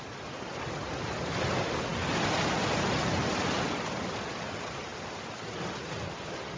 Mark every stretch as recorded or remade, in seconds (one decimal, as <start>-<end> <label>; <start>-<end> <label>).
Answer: 0.0-6.6 recorded